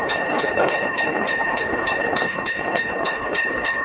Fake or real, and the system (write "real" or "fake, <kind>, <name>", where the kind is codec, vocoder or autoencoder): fake, codec, HILCodec